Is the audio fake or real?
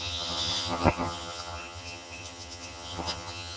fake